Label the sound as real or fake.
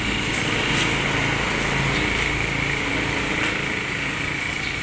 real